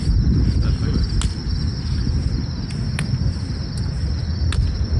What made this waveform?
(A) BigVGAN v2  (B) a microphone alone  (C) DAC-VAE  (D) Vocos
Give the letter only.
B